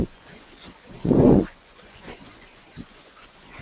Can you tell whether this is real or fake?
fake